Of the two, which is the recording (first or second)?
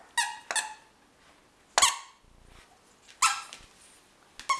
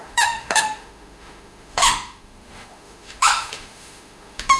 first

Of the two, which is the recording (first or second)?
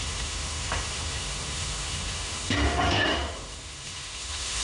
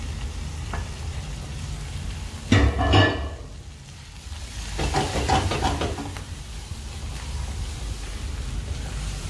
second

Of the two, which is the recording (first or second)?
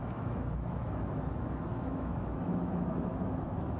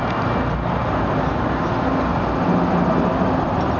second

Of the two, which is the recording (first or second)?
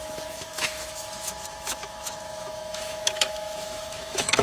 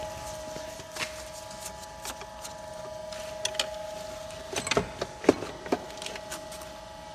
second